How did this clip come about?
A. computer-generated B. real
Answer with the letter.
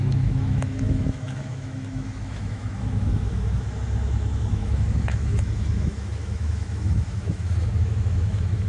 A